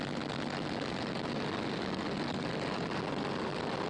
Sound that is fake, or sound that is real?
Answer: real